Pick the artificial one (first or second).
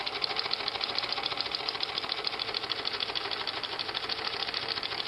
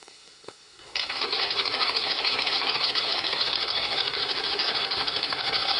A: second